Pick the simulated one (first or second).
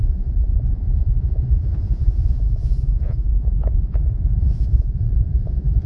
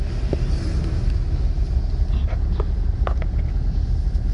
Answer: first